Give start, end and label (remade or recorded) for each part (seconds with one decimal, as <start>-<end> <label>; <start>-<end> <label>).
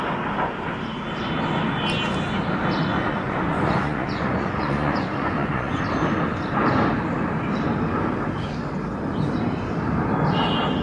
0.0-2.9 recorded; 2.9-5.8 remade; 5.8-10.8 recorded